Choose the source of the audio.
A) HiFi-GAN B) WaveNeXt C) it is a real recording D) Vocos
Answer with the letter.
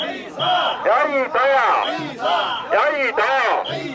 C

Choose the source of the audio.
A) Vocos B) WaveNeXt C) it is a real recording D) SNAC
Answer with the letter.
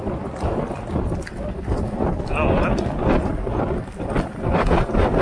C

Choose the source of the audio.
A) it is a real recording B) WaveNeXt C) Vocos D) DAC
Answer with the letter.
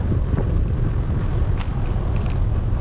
A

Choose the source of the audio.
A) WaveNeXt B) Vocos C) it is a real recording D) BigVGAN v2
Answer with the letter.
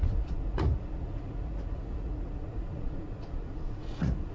B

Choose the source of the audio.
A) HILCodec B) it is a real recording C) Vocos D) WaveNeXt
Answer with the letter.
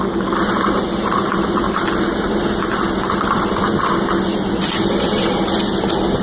B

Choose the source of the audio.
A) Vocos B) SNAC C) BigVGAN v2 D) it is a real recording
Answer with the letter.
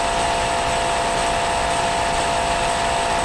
D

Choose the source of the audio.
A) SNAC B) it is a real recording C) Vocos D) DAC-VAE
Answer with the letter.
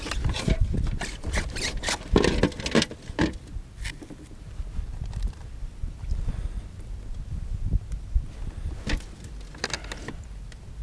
B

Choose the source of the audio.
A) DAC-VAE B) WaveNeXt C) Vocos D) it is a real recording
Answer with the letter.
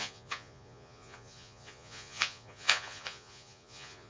C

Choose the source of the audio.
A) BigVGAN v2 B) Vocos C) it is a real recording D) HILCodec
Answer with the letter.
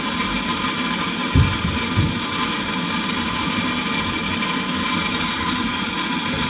C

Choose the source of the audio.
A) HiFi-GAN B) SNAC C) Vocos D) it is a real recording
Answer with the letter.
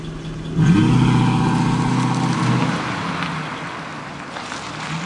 D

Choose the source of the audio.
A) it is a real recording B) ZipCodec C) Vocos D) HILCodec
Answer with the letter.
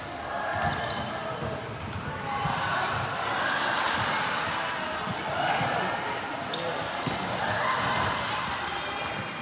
A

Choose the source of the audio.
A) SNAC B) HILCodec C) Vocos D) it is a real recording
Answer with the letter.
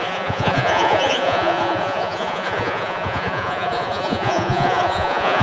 C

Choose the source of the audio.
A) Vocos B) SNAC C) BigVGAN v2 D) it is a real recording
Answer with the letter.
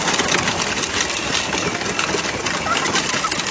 D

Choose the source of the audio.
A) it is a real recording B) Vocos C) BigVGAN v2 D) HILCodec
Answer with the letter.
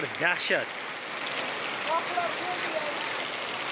A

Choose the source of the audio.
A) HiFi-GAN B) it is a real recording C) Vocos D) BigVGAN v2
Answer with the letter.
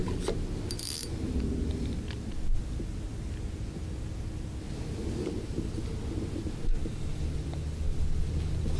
B